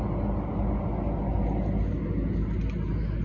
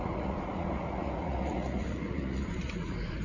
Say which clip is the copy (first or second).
second